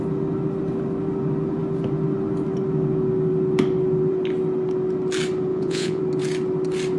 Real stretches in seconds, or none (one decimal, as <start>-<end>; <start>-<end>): 0.0-5.5; 6.0-7.0